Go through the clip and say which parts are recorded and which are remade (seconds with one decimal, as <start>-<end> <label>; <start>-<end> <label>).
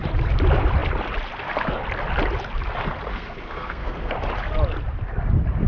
0.0-3.1 recorded; 3.1-4.1 remade; 4.1-5.7 recorded